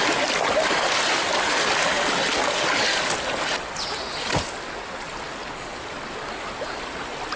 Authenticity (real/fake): real